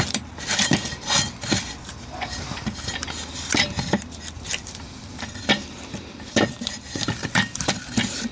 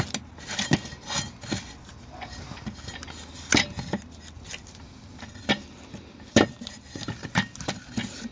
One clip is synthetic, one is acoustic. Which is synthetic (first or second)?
first